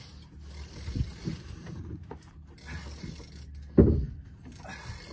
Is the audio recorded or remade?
recorded